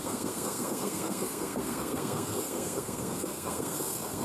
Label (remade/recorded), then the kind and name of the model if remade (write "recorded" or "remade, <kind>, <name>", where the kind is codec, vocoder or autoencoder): remade, codec, SNAC